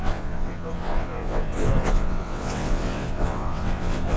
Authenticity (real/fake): fake